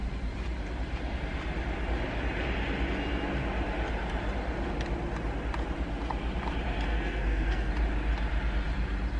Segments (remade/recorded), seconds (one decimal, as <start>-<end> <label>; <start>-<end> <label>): 0.0-6.9 recorded; 6.9-7.7 remade; 7.7-9.2 recorded